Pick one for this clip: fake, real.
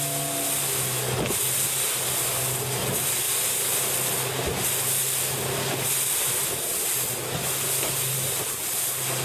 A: real